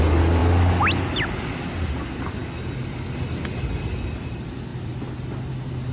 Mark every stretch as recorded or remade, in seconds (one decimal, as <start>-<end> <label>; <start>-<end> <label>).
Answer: 0.0-5.9 recorded